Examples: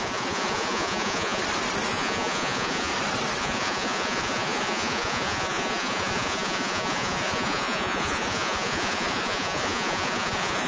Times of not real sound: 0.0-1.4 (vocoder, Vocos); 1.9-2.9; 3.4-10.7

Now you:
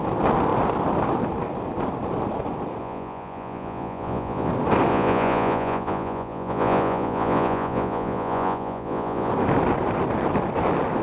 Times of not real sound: 2.8-4.5 (vocoder, Vocos); 4.9-9.3

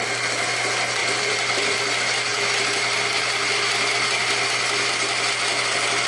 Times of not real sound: 1.0-1.8 (vocoder, BigVGAN v2)